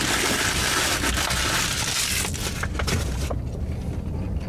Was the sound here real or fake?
real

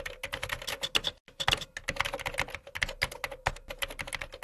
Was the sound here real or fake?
real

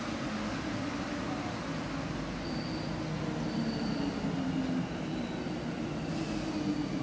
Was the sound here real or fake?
real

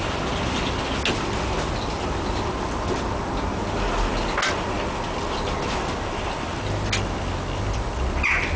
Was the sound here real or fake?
real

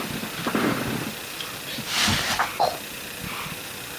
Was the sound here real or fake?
real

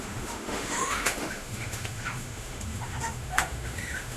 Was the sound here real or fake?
fake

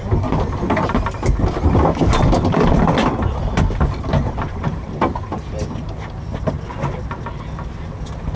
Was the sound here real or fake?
real